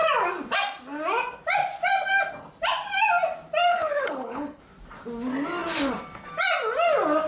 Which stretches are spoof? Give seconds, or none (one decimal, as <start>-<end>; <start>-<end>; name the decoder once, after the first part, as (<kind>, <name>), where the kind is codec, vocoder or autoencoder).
3.7-4.6 (codec, HILCodec)